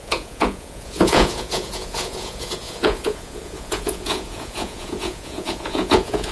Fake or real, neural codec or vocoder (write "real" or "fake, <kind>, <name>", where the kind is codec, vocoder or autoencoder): fake, vocoder, Vocos